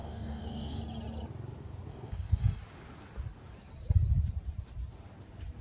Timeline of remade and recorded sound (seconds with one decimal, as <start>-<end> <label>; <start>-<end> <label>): 0.0-0.8 remade; 0.8-1.9 recorded; 1.9-2.6 remade; 2.6-5.6 recorded